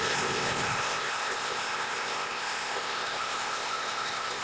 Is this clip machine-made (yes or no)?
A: yes